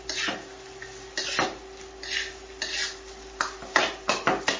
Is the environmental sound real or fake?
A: real